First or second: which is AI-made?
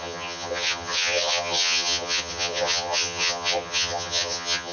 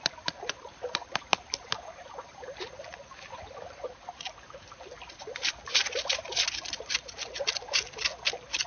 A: first